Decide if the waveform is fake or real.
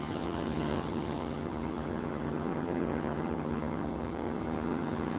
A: fake